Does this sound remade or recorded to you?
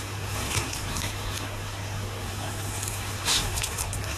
remade